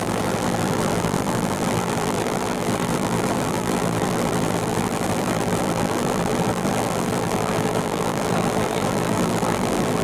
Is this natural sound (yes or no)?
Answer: no